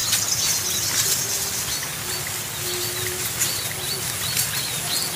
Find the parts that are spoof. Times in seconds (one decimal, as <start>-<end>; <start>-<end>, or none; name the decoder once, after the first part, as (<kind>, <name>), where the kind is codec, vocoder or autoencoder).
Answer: none